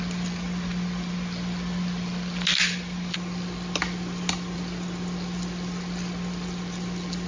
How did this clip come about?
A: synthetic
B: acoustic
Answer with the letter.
B